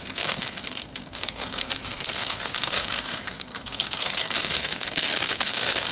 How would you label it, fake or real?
fake